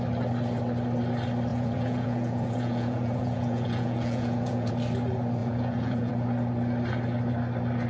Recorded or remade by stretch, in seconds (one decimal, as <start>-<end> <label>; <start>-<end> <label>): 0.0-1.5 recorded; 1.5-4.7 remade; 4.7-5.4 recorded; 5.4-6.1 remade; 6.1-7.9 recorded